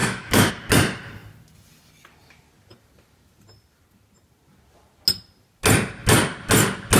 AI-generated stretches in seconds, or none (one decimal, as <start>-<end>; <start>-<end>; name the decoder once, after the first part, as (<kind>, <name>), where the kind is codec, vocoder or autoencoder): 0.0-0.5 (autoencoder, DAC-VAE)